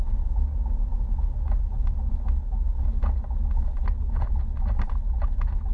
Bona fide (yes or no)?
yes